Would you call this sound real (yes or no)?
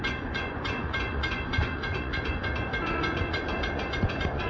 no